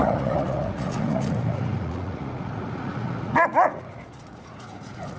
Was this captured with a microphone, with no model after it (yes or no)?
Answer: no